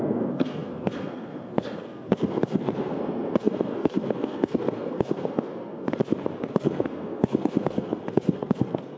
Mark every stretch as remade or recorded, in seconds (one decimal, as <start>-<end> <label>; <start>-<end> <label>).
0.0-6.0 remade; 6.0-6.5 recorded; 6.5-9.0 remade